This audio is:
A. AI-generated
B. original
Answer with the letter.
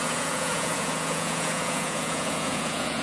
A